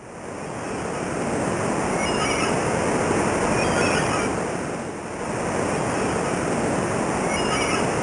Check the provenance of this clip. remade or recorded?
recorded